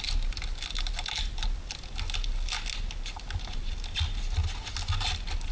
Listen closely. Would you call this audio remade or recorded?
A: recorded